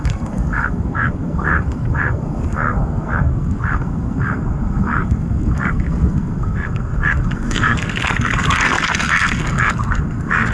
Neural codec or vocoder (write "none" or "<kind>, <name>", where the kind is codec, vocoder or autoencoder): codec, SNAC